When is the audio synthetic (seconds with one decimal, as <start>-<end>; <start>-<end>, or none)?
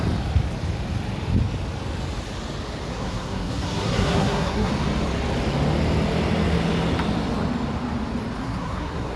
2.9-4.7; 8.4-9.2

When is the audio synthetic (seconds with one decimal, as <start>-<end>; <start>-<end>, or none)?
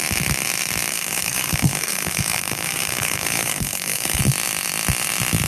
0.9-4.2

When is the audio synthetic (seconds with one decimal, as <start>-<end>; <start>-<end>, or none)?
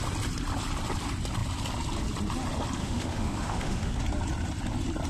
2.8-4.0